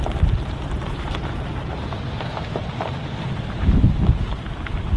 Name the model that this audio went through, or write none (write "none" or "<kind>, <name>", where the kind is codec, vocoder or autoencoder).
vocoder, BigVGAN v2